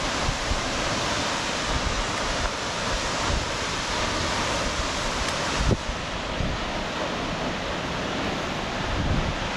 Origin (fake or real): real